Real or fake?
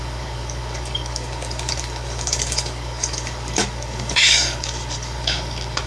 fake